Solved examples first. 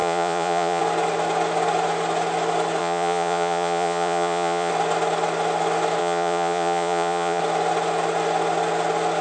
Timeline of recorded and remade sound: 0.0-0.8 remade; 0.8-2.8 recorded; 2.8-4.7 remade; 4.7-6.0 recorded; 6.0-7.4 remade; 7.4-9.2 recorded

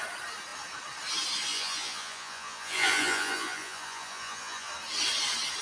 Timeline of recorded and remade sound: 0.0-1.5 recorded; 1.5-4.7 remade; 4.7-5.6 recorded

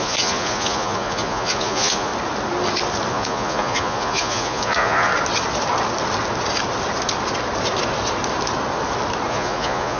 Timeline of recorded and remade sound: 0.0-2.1 remade; 2.1-3.1 recorded; 3.1-5.1 remade; 5.1-9.3 recorded; 9.3-10.0 remade

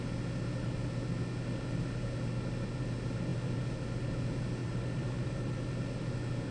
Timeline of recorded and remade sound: 0.0-4.6 recorded; 4.6-5.6 remade; 5.6-6.5 recorded

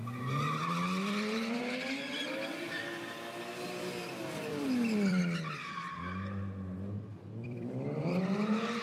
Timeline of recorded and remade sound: 0.0-1.6 remade; 1.6-4.5 recorded; 4.5-5.2 remade; 5.2-7.1 recorded; 7.1-8.2 remade; 8.2-8.8 recorded